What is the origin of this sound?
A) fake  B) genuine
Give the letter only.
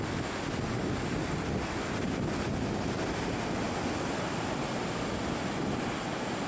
B